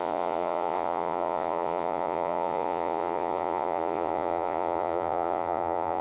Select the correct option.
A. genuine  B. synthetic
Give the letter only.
B